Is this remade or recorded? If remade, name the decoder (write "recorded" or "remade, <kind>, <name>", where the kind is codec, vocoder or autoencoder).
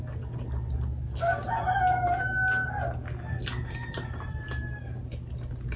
recorded